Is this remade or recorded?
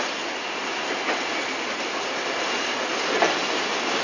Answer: remade